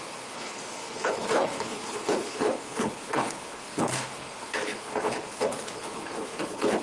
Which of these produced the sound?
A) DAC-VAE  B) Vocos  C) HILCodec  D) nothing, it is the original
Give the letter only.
C